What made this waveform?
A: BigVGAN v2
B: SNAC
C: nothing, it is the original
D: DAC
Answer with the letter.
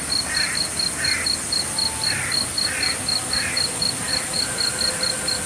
C